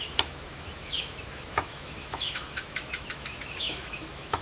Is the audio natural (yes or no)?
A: no